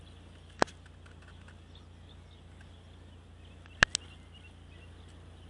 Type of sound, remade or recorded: recorded